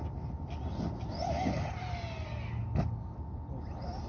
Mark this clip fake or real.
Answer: real